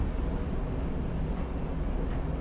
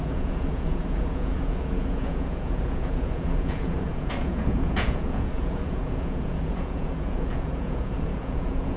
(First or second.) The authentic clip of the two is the first